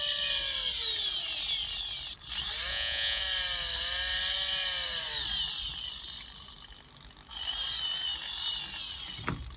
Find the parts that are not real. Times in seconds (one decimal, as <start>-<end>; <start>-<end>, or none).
2.7-3.2